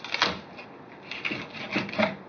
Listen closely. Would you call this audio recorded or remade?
recorded